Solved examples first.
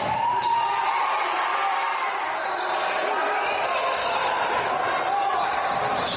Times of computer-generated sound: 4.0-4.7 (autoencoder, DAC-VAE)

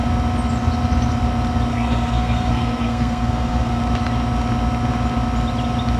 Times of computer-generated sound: 1.7-3.8 (codec, SNAC)